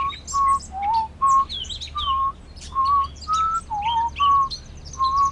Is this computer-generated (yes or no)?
no